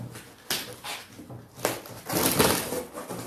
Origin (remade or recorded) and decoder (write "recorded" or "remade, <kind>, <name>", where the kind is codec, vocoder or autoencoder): recorded